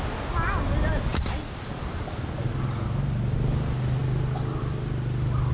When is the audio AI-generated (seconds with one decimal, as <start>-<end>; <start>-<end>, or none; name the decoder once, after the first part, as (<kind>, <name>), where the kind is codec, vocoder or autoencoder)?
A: none